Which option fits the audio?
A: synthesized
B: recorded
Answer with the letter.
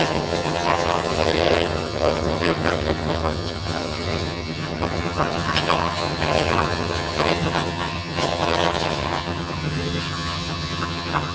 A